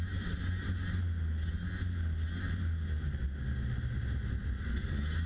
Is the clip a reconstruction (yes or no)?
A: no